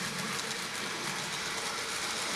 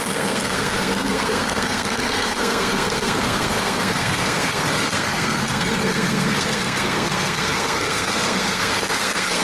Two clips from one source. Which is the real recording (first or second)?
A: first